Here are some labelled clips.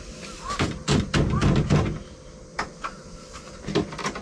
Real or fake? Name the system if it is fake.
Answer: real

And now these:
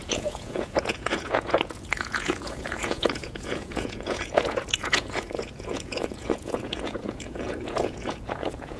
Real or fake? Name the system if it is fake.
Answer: fake, vocoder, Vocos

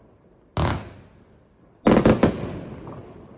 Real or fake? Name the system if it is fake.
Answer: real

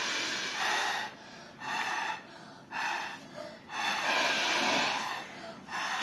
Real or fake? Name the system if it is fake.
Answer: real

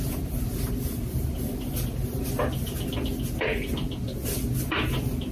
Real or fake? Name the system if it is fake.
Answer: real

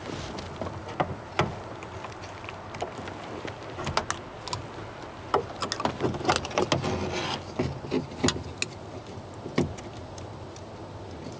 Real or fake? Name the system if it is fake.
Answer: real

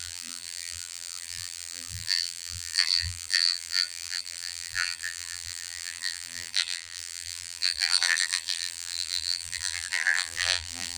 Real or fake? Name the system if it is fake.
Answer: fake, vocoder, BigVGAN v2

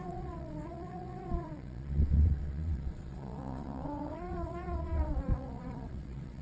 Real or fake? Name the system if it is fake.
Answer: fake, vocoder, WaveNeXt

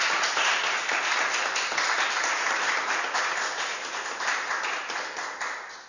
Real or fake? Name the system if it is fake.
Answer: real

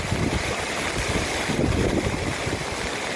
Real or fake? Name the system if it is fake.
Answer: real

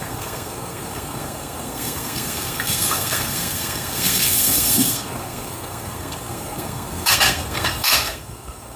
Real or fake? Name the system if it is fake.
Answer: fake, codec, SNAC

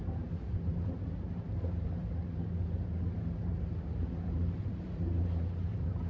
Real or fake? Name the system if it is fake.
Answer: fake, vocoder, BigVGAN v2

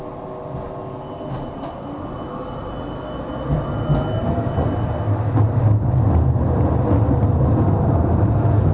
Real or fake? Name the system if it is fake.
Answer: real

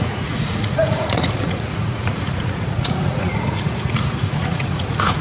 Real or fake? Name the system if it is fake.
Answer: fake, vocoder, Vocos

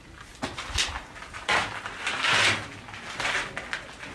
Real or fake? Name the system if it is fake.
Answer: real